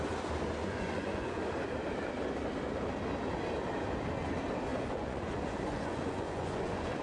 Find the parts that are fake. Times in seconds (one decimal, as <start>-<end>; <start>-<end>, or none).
0.6-1.4; 4.7-7.0